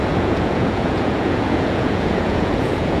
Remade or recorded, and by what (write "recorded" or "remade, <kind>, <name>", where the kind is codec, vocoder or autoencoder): remade, vocoder, Vocos